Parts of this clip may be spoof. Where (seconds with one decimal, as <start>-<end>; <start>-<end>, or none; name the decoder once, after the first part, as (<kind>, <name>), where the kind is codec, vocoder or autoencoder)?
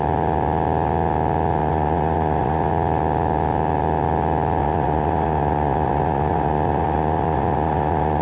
1.6-2.7 (vocoder, Vocos); 4.6-8.2